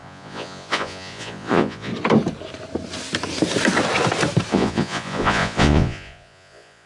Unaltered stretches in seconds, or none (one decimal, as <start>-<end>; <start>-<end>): 1.9-4.5